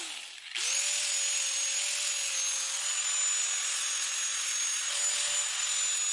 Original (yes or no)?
yes